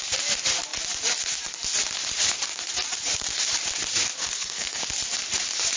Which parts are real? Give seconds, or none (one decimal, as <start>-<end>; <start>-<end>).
0.0-4.2; 4.8-5.8